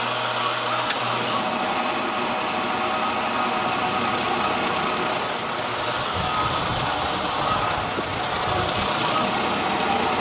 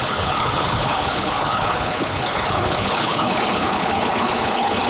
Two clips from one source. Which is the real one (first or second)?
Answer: first